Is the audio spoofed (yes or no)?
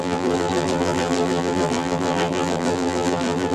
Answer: yes